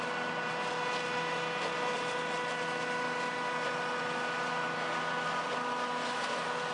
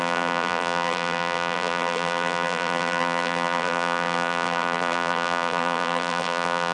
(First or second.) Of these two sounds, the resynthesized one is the second